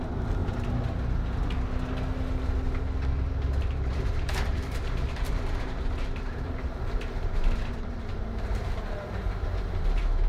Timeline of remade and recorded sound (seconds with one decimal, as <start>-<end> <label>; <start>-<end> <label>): 0.0-0.4 remade; 0.4-3.6 recorded; 3.6-10.3 remade